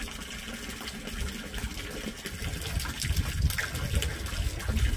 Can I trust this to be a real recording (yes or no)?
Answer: yes